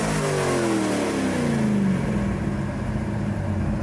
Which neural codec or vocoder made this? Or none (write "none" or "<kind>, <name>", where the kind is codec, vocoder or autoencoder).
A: none